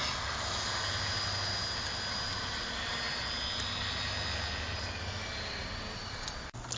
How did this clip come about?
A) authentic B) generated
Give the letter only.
A